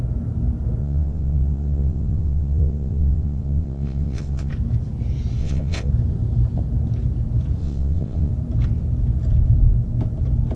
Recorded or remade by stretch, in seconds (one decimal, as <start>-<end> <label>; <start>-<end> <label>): 0.0-0.8 recorded; 0.8-4.5 remade; 4.5-5.4 recorded; 5.4-5.9 remade; 5.9-7.6 recorded; 7.6-8.3 remade; 8.3-10.6 recorded